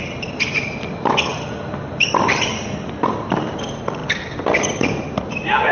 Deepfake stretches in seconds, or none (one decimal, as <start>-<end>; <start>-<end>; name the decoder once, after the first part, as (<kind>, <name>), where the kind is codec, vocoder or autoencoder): none